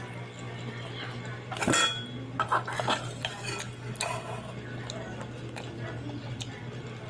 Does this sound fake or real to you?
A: real